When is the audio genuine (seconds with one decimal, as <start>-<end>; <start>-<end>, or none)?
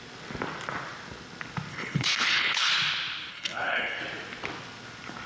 0.0-1.7; 2.7-3.3; 4.0-5.3